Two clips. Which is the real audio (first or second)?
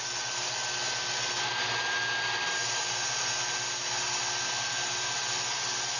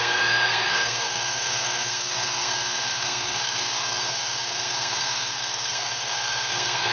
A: first